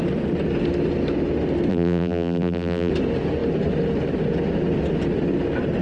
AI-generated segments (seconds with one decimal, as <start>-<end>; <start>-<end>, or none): 1.7-2.9